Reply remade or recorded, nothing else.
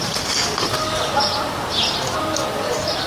recorded